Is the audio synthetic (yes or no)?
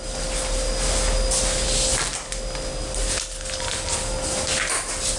no